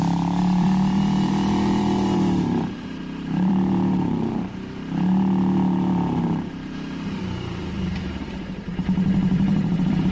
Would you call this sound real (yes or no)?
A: no